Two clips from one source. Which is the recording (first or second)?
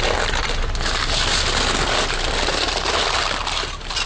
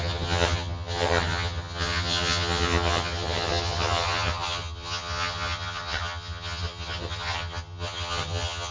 first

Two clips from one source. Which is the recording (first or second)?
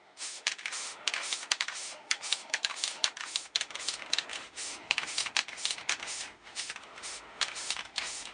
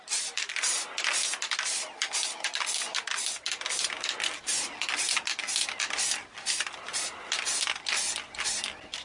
second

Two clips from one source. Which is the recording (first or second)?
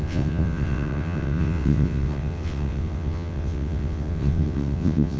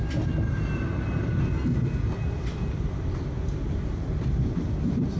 second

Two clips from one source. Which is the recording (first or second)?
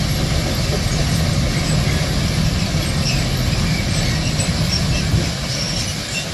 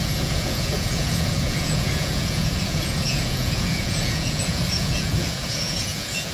first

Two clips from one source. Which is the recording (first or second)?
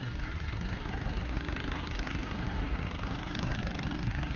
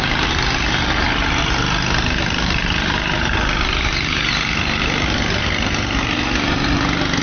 second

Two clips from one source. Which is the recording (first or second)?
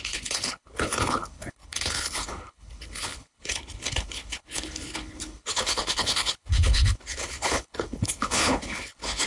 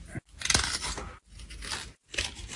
second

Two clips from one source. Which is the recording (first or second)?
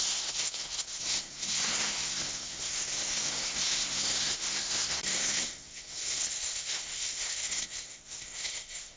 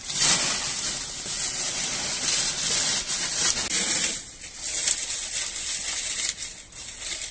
second